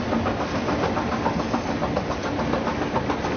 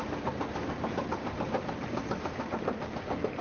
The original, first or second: first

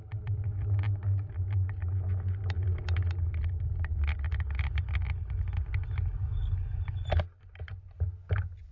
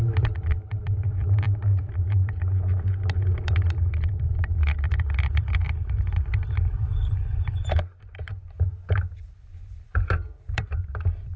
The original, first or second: first